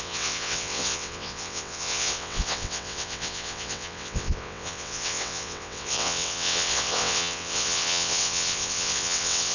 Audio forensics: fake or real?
fake